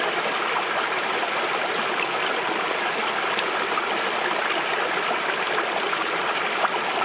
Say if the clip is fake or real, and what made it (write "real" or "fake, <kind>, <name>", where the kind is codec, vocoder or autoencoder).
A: real